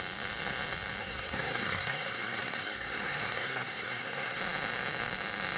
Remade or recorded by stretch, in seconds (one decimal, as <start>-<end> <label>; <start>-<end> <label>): 0.0-1.0 recorded; 1.0-4.4 remade; 4.4-5.6 recorded